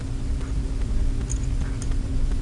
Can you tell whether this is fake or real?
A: real